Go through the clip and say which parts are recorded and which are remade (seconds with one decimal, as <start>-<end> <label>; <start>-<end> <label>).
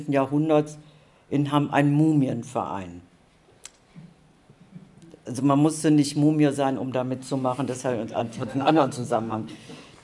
0.0-8.2 recorded; 8.2-9.5 remade; 9.5-10.0 recorded